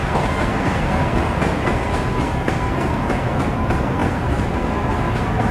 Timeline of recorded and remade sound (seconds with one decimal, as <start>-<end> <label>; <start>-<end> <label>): 0.0-5.5 remade